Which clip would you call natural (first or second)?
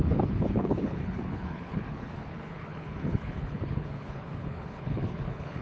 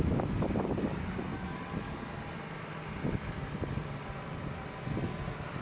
second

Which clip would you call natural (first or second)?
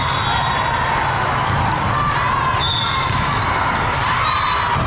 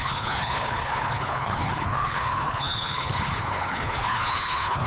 first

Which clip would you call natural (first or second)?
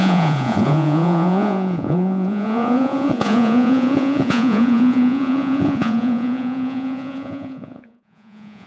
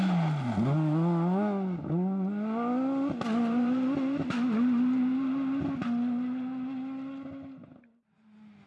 second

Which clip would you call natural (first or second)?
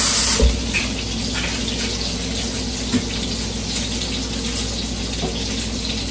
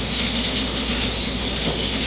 first